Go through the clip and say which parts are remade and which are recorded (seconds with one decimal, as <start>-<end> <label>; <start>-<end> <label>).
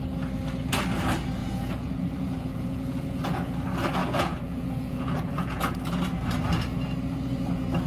0.0-1.4 recorded; 1.4-3.5 remade; 3.5-4.0 recorded; 4.0-5.6 remade; 5.6-7.9 recorded